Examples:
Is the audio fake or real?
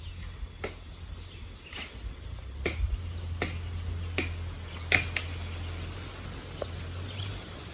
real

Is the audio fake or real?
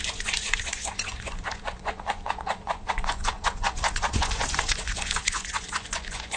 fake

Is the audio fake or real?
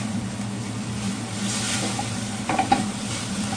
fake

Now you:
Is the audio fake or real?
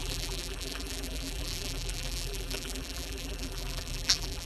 fake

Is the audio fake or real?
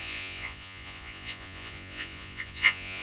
fake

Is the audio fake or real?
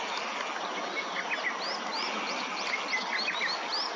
real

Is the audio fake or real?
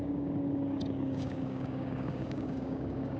fake